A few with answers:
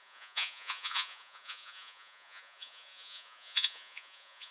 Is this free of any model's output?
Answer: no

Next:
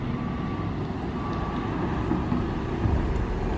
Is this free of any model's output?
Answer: yes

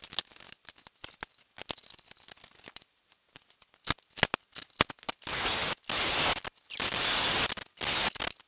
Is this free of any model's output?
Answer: yes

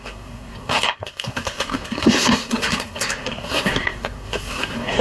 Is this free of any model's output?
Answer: no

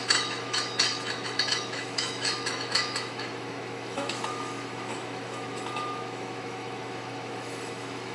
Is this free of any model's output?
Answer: no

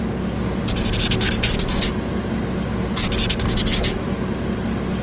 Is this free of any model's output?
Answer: yes